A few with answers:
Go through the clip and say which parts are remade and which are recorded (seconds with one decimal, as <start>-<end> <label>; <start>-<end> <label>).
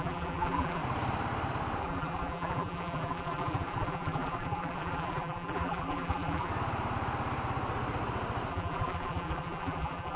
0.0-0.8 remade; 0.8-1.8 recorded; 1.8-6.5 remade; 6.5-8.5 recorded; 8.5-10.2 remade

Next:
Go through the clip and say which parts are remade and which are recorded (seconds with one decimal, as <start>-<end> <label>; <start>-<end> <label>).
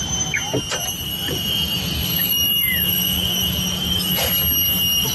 0.0-1.1 recorded; 1.1-4.2 remade; 4.2-5.1 recorded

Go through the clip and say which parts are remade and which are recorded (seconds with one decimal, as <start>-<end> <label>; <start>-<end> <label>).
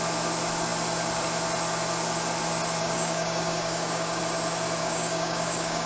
0.0-2.8 recorded; 2.8-4.2 remade; 4.2-4.8 recorded; 4.8-5.9 remade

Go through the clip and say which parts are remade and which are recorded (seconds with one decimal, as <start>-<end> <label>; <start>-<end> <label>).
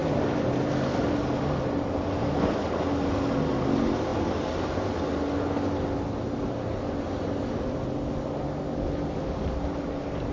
0.0-4.1 recorded; 4.1-4.9 remade; 4.9-10.3 recorded